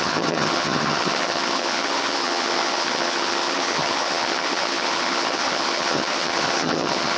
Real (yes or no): no